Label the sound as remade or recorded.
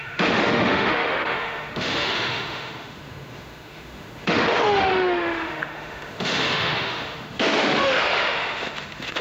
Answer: remade